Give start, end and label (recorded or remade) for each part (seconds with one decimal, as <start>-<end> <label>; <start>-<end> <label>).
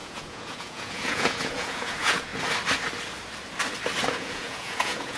0.0-2.3 remade; 2.3-4.1 recorded; 4.1-5.2 remade